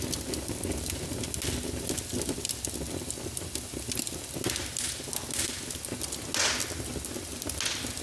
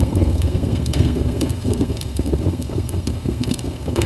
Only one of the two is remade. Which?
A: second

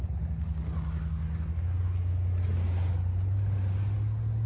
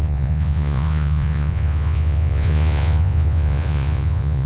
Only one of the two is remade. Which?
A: second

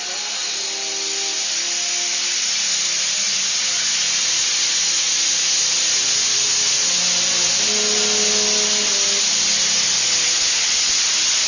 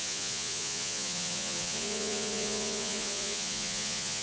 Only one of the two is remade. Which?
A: second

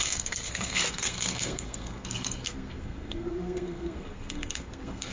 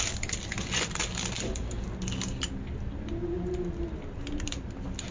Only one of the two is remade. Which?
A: first